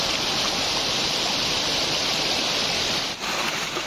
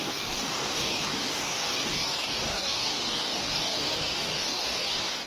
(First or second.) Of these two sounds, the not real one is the second